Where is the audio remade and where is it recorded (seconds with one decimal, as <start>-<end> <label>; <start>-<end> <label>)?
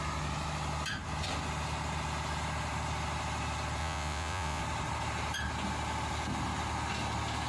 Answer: 0.0-3.8 recorded; 3.8-4.6 remade; 4.6-7.5 recorded